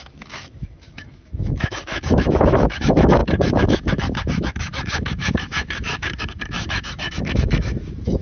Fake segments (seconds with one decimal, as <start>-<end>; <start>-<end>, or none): 0.0-8.2